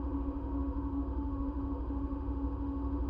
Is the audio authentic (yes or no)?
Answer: no